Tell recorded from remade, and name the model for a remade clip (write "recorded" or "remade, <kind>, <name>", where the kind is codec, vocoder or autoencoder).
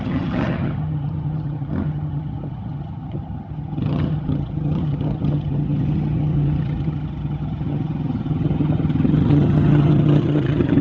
remade, vocoder, HiFi-GAN